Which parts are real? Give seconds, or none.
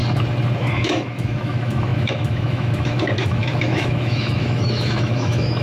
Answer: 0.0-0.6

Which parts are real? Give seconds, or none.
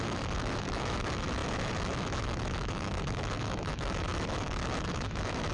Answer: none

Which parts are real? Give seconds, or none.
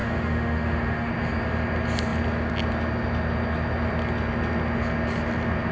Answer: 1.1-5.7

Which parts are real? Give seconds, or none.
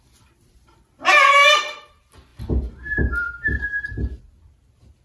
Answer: 0.0-5.0